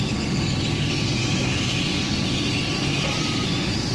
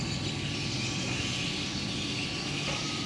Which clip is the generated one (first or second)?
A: first